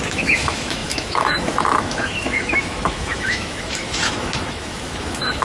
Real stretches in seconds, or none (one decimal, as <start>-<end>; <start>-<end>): none